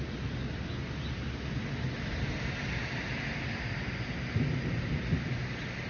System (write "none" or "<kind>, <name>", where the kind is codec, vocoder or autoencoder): none